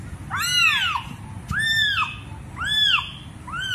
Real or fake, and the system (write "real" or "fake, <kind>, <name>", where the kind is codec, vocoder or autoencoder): real